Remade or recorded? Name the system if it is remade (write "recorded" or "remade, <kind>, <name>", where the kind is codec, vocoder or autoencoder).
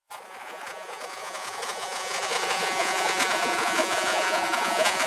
remade, vocoder, Vocos